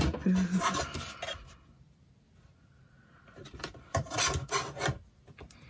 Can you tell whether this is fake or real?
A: real